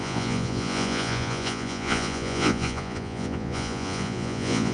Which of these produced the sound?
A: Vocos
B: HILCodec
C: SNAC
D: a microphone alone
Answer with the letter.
A